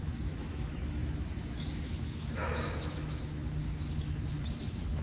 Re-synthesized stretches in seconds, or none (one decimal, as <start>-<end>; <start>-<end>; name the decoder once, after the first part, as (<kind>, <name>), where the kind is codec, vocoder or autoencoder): 0.0-5.0 (autoencoder, DAC-VAE)

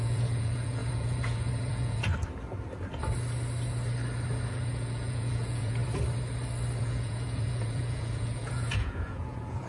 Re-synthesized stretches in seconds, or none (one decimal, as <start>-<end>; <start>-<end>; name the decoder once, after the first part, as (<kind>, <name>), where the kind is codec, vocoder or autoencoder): 0.0-2.1 (vocoder, Vocos); 4.5-5.8; 6.8-9.7

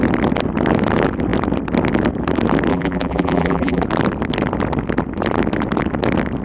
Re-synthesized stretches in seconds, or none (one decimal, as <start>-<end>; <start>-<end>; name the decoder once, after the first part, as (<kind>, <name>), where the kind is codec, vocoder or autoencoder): 2.7-3.8 (vocoder, BigVGAN v2)

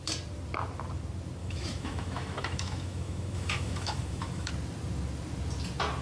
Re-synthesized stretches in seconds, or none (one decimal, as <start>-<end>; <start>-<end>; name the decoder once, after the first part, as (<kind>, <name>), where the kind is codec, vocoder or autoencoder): 1.4-4.5 (autoencoder, DAC-VAE)